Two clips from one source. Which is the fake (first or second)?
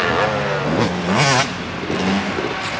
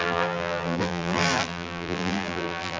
second